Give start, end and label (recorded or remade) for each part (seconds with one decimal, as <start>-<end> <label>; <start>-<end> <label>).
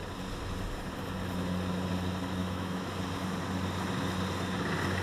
0.0-2.4 recorded; 2.4-3.0 remade; 3.0-5.0 recorded